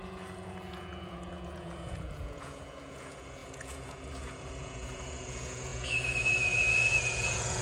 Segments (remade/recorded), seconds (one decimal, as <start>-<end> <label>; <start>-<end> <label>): 0.0-7.6 remade